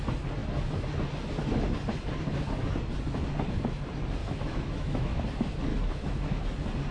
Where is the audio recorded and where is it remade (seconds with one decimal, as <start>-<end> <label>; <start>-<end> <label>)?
0.0-4.2 recorded; 4.2-5.2 remade; 5.2-5.7 recorded; 5.7-6.4 remade; 6.4-6.9 recorded